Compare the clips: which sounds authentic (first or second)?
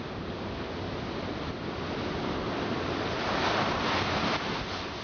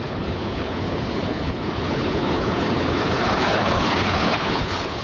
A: first